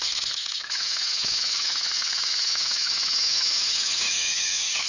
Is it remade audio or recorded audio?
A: remade